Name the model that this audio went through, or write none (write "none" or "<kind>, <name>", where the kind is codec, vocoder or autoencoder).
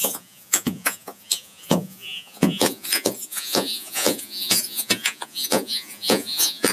vocoder, Vocos